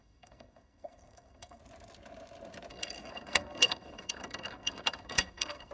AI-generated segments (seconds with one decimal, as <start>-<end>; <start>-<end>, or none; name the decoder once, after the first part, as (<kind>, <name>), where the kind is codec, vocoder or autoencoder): 0.0-1.6 (codec, SNAC); 2.7-5.7